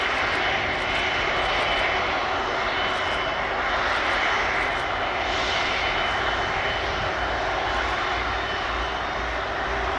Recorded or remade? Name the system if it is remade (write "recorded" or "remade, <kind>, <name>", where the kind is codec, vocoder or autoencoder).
recorded